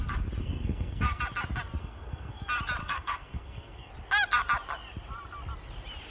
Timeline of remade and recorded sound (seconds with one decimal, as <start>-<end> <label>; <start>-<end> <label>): 0.0-0.4 recorded; 0.4-1.2 remade; 1.2-1.8 recorded; 1.8-2.4 remade; 2.4-2.8 recorded; 2.8-3.9 remade; 3.9-6.1 recorded